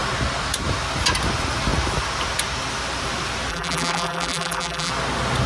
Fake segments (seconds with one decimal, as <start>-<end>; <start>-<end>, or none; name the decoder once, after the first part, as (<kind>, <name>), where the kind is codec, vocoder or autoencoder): 3.5-4.9 (vocoder, BigVGAN v2)